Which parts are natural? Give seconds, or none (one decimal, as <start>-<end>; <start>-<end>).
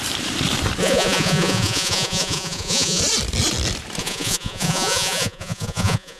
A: 0.0-0.8; 3.0-4.0